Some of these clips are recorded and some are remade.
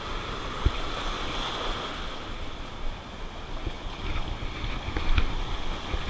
recorded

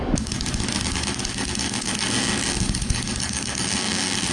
remade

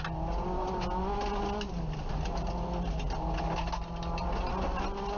recorded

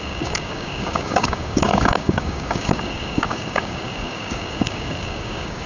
remade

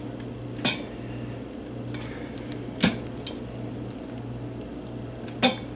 recorded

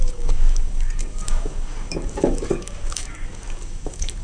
remade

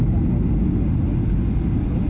recorded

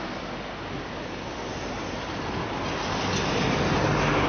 recorded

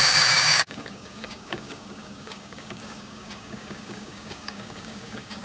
remade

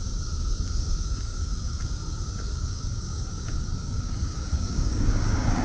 remade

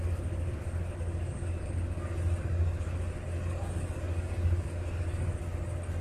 remade